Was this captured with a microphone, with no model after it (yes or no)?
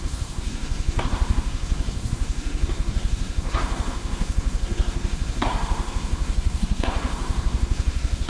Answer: no